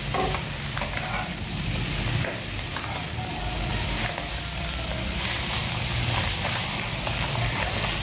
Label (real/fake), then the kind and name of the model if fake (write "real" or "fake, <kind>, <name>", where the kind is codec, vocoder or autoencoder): real